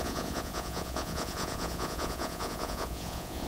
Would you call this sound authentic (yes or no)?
no